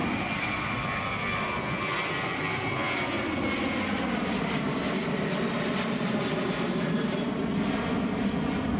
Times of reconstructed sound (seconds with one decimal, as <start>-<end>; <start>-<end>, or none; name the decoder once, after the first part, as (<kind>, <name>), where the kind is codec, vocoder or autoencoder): none